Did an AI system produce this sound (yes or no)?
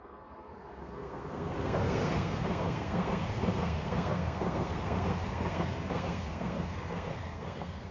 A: yes